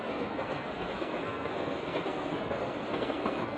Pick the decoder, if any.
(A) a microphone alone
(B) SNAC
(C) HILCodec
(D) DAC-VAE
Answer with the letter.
B